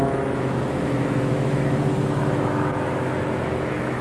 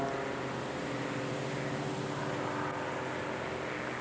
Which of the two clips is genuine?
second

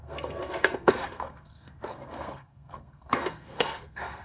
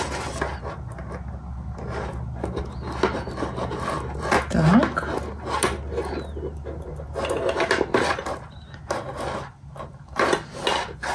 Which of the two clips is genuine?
second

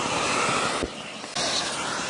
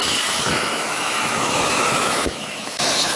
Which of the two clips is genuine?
first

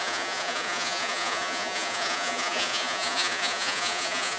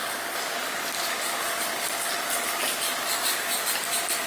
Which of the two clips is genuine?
second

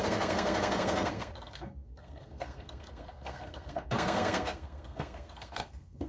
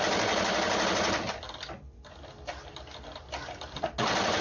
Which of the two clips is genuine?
second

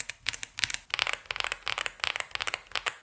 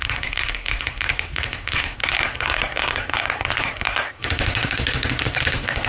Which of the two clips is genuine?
first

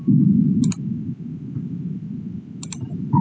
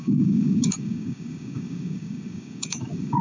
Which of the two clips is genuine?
first